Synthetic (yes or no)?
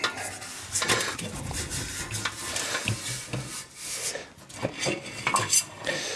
no